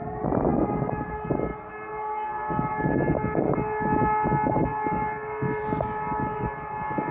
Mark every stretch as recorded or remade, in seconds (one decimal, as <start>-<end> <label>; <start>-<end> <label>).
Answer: 0.0-7.1 recorded